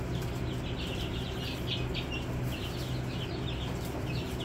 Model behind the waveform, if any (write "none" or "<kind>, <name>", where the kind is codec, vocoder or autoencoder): none